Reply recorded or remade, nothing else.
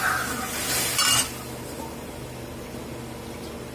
recorded